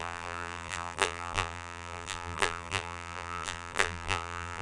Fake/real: fake